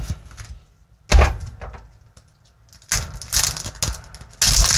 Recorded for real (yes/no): yes